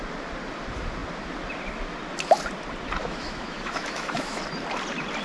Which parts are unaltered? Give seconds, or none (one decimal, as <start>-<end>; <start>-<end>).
0.0-3.0; 4.4-5.2